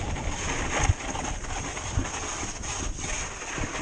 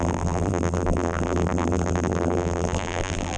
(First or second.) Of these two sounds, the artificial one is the second